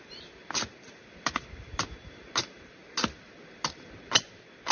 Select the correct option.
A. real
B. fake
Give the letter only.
A